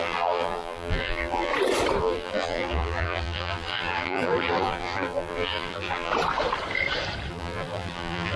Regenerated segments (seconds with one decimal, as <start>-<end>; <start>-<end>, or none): 0.0-1.5; 2.0-6.1; 7.3-8.4